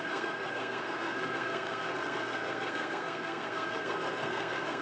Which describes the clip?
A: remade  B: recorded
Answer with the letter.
A